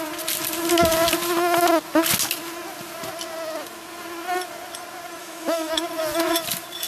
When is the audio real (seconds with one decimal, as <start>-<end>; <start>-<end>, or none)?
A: 0.0-5.2; 5.7-6.9